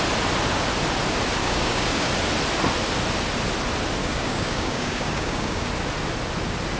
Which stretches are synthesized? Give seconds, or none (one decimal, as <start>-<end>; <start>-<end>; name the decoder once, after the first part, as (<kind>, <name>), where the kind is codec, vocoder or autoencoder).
1.4-2.1 (codec, DAC); 4.0-5.7